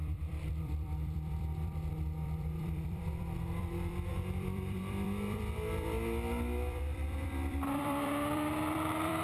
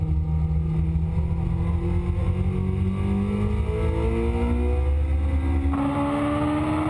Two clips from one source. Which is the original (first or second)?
second